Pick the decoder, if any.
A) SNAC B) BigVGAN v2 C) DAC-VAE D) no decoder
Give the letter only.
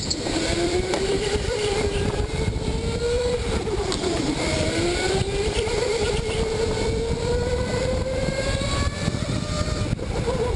B